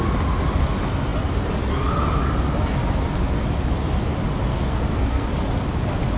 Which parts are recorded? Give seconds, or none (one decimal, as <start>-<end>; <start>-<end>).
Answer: 0.0-4.5; 5.3-6.2